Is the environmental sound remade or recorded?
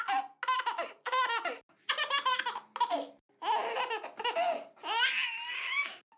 recorded